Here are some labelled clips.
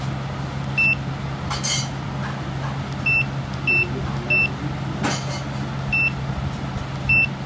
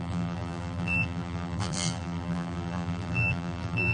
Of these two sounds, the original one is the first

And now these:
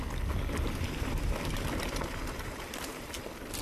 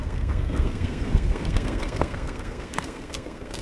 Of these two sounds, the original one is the first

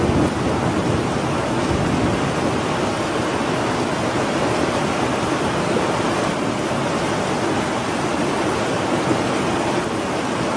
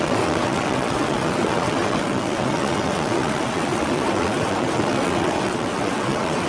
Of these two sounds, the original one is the first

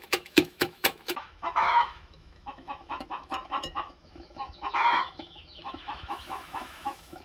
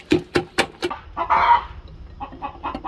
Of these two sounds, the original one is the second